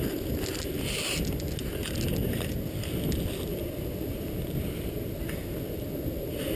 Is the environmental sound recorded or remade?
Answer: recorded